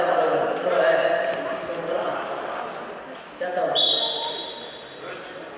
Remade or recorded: recorded